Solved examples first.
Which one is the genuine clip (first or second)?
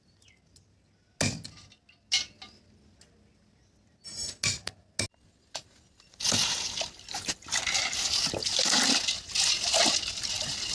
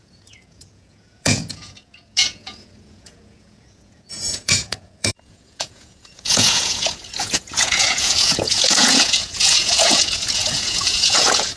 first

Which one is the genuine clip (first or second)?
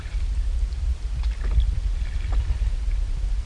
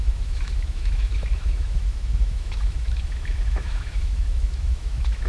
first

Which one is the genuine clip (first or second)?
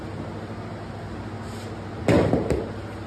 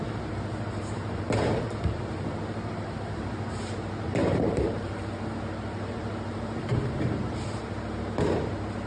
first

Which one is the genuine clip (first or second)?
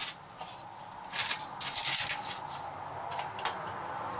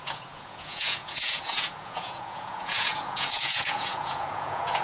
first